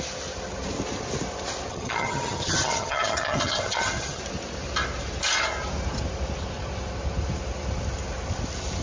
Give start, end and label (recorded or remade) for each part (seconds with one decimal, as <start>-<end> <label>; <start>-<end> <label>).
0.0-1.7 recorded; 1.7-4.2 remade; 4.2-8.8 recorded